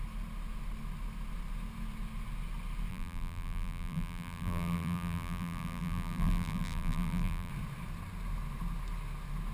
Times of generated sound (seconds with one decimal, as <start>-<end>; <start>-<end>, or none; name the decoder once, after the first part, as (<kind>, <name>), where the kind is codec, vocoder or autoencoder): 2.9-7.5 (vocoder, BigVGAN v2)